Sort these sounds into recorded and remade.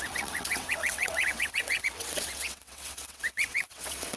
remade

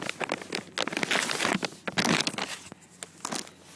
recorded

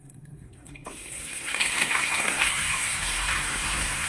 remade